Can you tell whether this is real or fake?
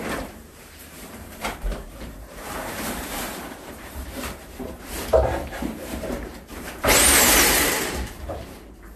fake